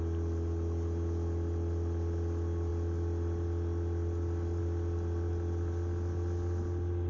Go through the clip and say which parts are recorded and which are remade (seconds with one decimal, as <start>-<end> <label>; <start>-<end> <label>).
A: 0.0-7.1 recorded